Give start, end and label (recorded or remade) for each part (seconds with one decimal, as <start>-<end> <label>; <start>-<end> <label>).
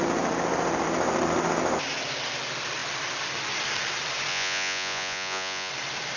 0.0-4.3 recorded; 4.3-5.7 remade; 5.7-6.2 recorded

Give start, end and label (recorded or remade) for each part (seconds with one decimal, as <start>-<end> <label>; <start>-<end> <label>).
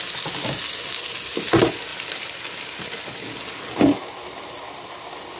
0.0-5.4 recorded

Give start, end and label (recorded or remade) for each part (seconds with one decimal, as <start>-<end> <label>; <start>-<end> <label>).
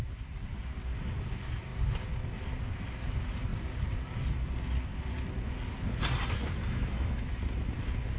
0.0-6.6 recorded; 6.6-7.3 remade; 7.3-8.2 recorded